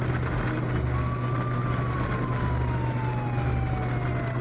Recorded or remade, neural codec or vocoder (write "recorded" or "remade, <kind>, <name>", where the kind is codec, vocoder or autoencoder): recorded